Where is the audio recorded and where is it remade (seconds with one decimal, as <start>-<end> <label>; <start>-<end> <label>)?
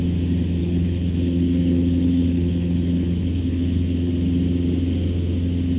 0.0-0.6 recorded; 0.6-4.1 remade; 4.1-5.8 recorded